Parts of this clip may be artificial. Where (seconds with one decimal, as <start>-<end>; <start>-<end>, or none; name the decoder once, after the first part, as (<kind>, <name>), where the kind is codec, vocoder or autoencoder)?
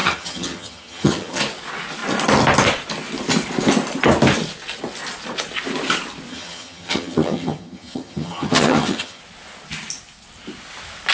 0.0-1.4 (vocoder, HiFi-GAN); 6.3-9.2